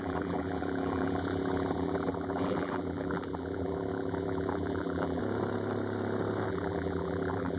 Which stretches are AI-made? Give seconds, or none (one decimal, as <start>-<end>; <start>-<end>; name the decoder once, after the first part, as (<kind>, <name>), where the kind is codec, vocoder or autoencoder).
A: 0.0-5.2 (vocoder, BigVGAN v2); 6.5-7.6

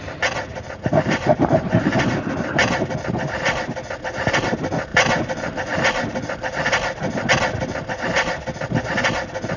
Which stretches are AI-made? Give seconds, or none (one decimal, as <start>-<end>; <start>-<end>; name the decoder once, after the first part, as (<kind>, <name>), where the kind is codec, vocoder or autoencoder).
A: 0.5-2.9 (vocoder, BigVGAN v2); 4.9-7.3

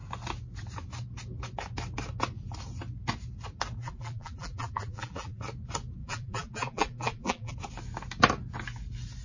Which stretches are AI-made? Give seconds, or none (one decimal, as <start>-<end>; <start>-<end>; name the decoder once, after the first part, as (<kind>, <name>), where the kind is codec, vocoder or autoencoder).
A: 3.8-5.4 (vocoder, BigVGAN v2); 6.0-7.5

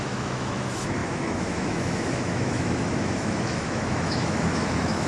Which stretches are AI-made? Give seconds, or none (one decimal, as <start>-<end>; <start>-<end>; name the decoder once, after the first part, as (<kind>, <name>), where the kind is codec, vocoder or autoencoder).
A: 0.0-5.1 (autoencoder, DAC-VAE)

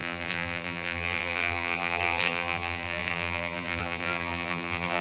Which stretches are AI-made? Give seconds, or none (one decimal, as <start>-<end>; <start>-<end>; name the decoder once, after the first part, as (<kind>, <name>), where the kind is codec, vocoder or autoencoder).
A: 0.0-5.0 (vocoder, BigVGAN v2)

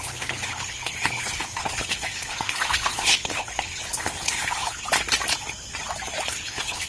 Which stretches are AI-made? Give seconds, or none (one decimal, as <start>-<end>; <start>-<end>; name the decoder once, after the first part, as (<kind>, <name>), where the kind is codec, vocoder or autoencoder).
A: 0.0-4.9 (codec, HILCodec); 6.3-6.9